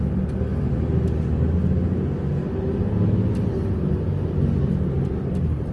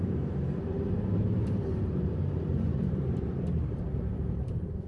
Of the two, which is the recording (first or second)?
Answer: first